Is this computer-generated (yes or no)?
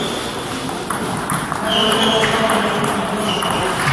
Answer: no